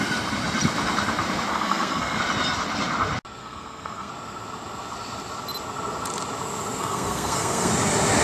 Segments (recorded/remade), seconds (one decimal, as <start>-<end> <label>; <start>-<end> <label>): 0.0-1.5 recorded; 1.5-2.2 remade; 2.2-3.4 recorded; 3.4-4.1 remade; 4.1-6.8 recorded; 6.8-7.7 remade; 7.7-8.2 recorded